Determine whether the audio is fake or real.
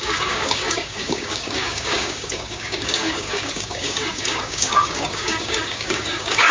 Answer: fake